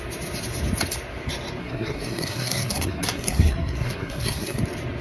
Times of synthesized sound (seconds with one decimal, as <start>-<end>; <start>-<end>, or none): 1.6-4.6